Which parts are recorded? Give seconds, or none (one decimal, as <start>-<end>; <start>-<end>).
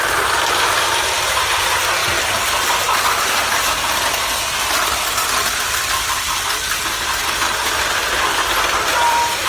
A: 2.0-5.8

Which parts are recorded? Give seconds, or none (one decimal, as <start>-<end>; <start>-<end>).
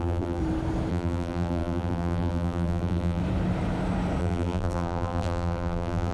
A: 0.4-0.9; 3.2-4.2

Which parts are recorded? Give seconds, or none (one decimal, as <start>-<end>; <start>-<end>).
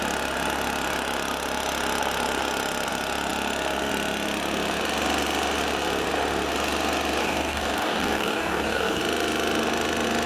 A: 0.0-7.2; 9.0-10.3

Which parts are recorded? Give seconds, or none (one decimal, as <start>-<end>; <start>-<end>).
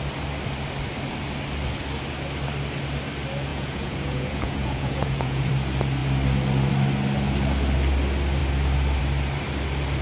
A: 0.0-3.5; 5.5-10.0